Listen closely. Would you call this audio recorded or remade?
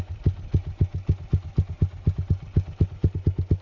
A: recorded